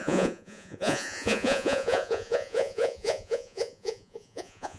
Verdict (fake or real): fake